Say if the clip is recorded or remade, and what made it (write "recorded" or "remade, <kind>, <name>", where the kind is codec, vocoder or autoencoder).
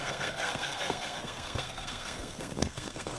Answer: remade, codec, SNAC